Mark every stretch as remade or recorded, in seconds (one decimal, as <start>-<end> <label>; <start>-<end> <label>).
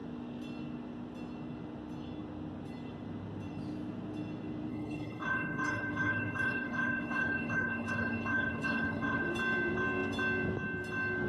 0.0-4.7 recorded; 4.7-9.3 remade; 9.3-11.3 recorded